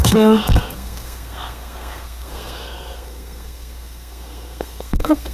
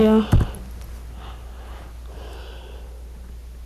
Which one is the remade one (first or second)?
first